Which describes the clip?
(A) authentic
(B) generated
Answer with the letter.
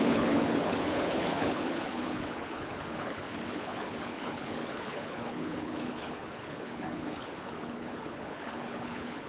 B